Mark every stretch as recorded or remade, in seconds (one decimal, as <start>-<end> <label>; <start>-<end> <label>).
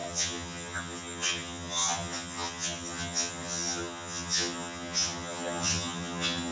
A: 0.0-6.5 remade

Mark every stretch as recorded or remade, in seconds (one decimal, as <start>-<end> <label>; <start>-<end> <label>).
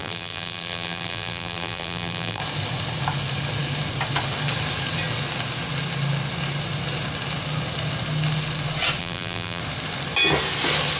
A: 0.0-2.4 remade; 2.4-9.0 recorded; 9.0-9.6 remade; 9.6-11.0 recorded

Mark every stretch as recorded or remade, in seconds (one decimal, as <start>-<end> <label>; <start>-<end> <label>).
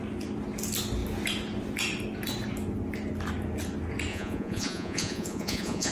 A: 0.0-4.1 recorded; 4.1-5.9 remade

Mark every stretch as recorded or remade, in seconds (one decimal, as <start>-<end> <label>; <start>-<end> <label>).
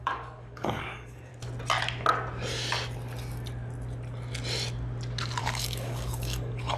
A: 0.0-1.3 remade; 1.3-5.4 recorded; 5.4-6.8 remade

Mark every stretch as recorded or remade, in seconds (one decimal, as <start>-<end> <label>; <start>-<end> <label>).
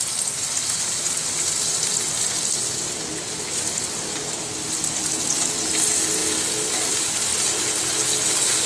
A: 0.0-8.7 recorded